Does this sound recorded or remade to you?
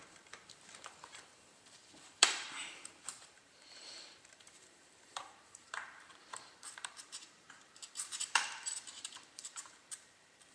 remade